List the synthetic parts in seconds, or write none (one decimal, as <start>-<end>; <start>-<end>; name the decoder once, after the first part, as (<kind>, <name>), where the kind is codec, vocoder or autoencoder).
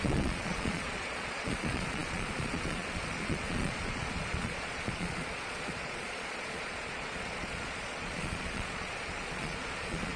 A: 0.0-10.2 (vocoder, Vocos)